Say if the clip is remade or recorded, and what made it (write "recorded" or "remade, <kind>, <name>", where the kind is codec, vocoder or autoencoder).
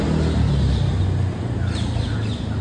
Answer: recorded